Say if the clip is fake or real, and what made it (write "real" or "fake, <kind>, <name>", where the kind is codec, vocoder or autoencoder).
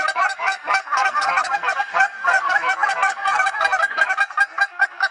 fake, codec, SNAC